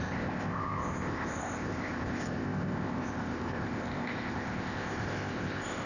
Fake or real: fake